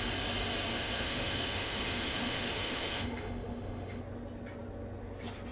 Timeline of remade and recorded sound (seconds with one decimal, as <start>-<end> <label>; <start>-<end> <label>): 0.0-0.7 recorded; 0.7-4.0 remade; 4.0-5.5 recorded